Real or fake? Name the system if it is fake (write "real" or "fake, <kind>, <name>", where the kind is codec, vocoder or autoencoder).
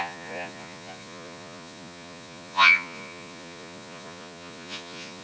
fake, vocoder, Vocos